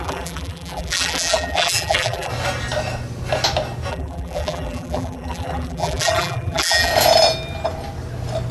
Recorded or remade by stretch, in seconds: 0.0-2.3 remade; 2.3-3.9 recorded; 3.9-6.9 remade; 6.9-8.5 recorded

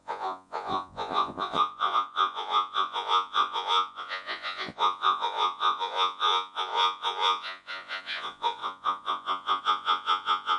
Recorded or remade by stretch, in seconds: 0.0-10.6 remade

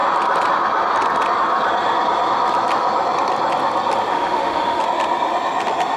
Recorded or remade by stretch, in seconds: 0.0-4.1 recorded; 4.1-4.8 remade; 4.8-6.0 recorded

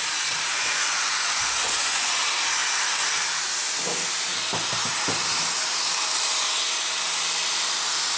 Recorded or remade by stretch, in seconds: 0.0-0.5 recorded; 0.5-2.2 remade; 2.2-8.2 recorded

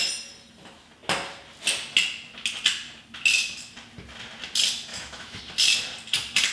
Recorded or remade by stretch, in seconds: 0.0-4.9 recorded; 4.9-5.4 remade; 5.4-6.5 recorded

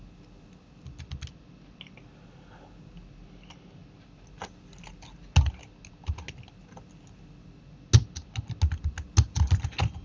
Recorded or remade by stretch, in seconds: 0.0-10.0 recorded

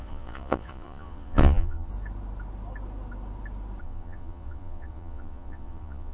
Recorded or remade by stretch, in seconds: 0.0-1.9 remade; 1.9-3.8 recorded; 3.8-6.1 remade

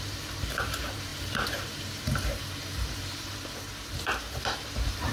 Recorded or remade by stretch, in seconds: 0.0-5.1 remade